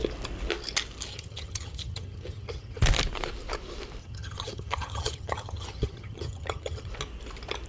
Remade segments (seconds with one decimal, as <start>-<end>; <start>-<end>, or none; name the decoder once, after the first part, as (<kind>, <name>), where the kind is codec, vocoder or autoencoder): 1.1-2.8 (vocoder, HiFi-GAN); 4.0-6.9